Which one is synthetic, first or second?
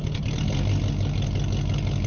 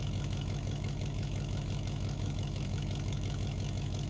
second